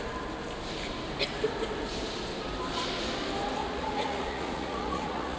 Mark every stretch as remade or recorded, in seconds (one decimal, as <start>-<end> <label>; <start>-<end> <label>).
0.0-3.6 recorded; 3.6-5.4 remade